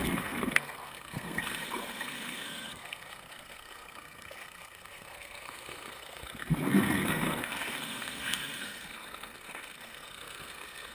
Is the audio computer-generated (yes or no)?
yes